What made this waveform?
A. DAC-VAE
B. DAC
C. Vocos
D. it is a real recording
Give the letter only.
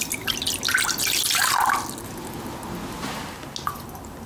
D